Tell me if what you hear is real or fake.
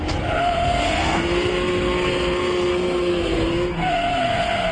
fake